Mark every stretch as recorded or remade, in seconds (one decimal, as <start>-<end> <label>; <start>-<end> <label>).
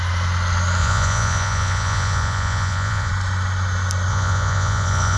0.0-0.8 recorded; 0.8-3.1 remade; 3.1-4.1 recorded; 4.1-5.2 remade